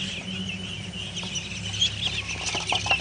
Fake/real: real